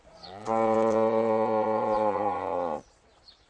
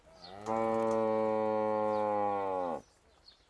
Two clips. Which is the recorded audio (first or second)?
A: second